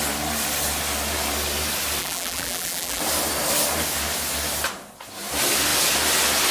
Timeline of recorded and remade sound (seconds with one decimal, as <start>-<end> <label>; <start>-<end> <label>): 0.0-2.0 recorded; 2.0-3.0 remade; 3.0-6.5 recorded